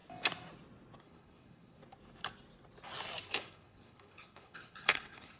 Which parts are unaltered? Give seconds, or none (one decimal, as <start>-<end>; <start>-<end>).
0.0-1.0; 1.8-3.3